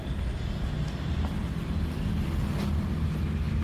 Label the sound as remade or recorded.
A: recorded